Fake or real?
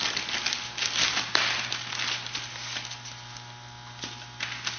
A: real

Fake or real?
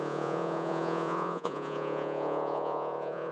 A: fake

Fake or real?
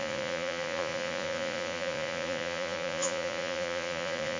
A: fake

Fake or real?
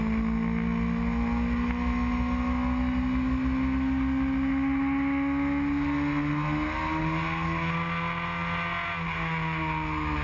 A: real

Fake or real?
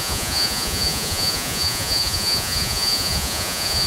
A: fake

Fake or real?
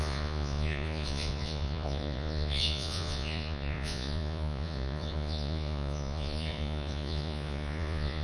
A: fake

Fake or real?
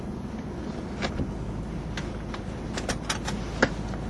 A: real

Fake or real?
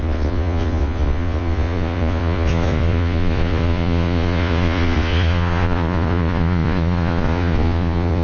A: fake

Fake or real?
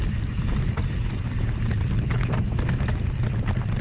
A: real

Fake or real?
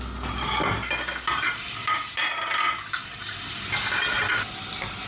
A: real